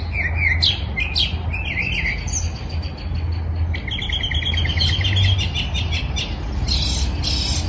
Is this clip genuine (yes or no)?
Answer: yes